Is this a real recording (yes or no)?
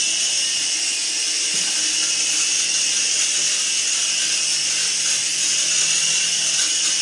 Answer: yes